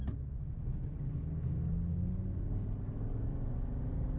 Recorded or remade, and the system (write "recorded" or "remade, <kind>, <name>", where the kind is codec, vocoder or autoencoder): recorded